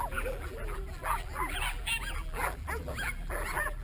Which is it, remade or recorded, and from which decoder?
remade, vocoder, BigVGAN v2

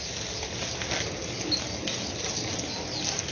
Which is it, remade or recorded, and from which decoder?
recorded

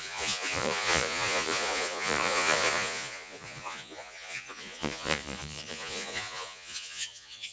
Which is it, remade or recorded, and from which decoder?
remade, vocoder, Vocos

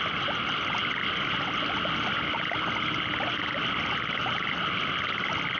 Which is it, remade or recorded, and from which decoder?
recorded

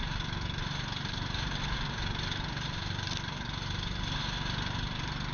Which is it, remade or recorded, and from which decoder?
recorded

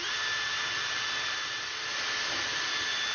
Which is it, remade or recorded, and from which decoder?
recorded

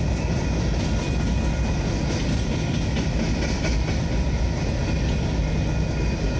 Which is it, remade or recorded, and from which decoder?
recorded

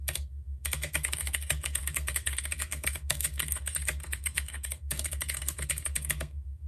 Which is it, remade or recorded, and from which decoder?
remade, codec, SNAC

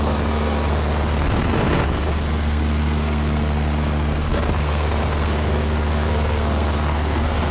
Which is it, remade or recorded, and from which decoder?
remade, codec, SNAC